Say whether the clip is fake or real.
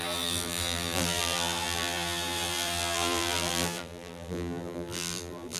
fake